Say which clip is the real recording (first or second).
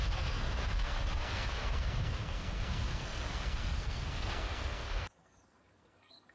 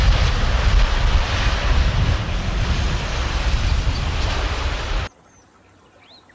second